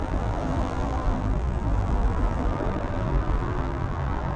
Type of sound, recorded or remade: remade